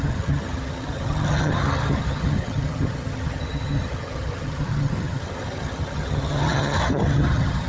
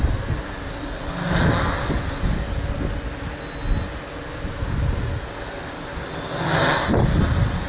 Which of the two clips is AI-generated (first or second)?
first